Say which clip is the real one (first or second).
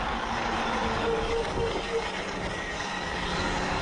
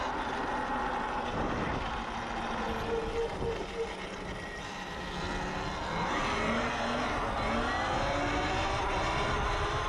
second